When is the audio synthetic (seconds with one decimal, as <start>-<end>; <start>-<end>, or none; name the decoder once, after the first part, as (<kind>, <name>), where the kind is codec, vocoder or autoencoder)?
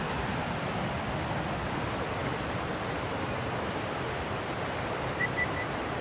none